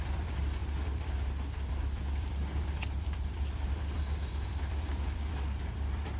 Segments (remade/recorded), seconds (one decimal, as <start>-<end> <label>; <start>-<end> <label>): 0.0-6.2 remade